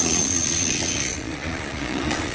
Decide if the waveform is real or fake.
fake